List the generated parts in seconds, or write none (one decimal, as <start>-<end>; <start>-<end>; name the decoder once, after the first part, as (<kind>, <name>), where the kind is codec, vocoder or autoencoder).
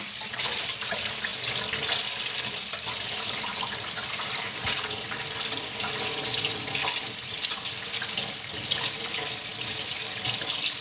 none